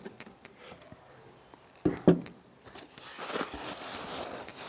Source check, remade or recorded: recorded